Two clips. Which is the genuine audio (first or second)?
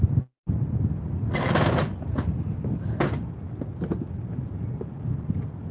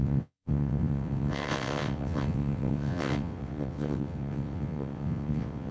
first